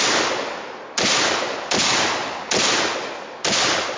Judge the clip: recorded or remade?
recorded